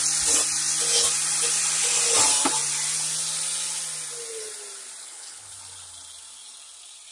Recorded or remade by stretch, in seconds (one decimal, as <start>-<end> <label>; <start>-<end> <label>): 0.0-5.0 recorded; 5.0-5.5 remade; 5.5-7.1 recorded